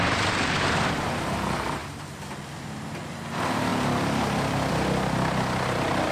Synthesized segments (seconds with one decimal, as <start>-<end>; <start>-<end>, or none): none